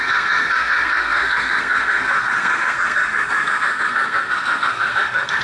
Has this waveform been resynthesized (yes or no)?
yes